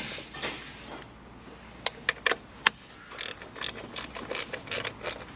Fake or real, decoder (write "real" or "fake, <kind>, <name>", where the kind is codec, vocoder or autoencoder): real